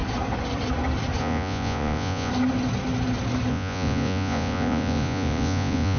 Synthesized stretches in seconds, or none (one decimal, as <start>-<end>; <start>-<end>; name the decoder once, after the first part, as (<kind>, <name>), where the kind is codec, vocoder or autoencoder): 1.2-2.3 (vocoder, Vocos); 3.5-6.0